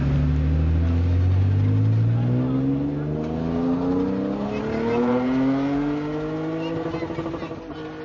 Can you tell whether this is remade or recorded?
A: recorded